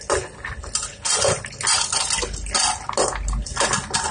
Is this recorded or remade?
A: recorded